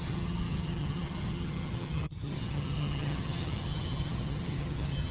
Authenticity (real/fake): fake